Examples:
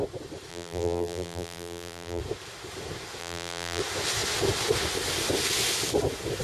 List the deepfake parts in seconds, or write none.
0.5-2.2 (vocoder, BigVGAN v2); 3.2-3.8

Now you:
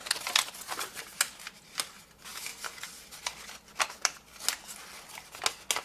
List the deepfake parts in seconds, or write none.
none

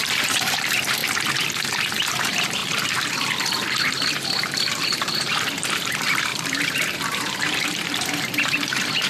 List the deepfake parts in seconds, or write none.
0.0-1.0 (vocoder, BigVGAN v2); 2.1-2.6; 3.8-9.1

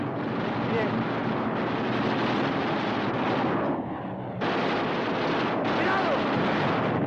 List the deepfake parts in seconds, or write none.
1.2-4.6 (vocoder, BigVGAN v2)